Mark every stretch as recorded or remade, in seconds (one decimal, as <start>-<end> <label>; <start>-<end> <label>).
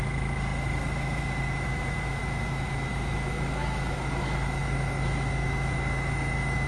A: 0.0-6.7 remade